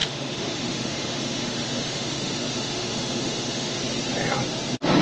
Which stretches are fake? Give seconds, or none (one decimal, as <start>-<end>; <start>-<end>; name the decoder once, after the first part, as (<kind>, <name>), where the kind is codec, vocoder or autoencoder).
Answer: 0.0-3.8 (autoencoder, DAC-VAE)